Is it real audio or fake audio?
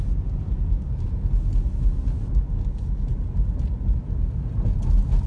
real